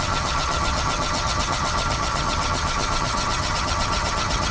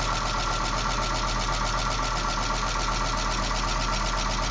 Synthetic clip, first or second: first